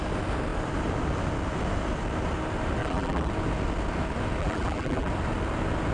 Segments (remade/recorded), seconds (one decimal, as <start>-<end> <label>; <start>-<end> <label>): 0.0-2.8 recorded; 2.8-3.3 remade; 3.3-4.4 recorded; 4.4-5.1 remade; 5.1-5.9 recorded